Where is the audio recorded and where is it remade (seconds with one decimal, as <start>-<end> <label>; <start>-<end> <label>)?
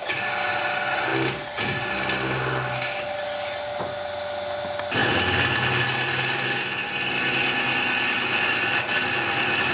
0.0-9.7 recorded